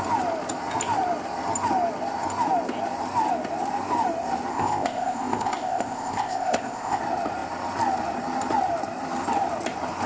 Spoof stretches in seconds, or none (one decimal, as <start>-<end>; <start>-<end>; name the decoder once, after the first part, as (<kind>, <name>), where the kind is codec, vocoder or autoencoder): 4.5-7.0 (codec, ZipCodec)